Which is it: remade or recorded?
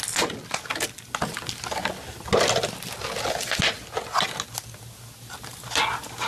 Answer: recorded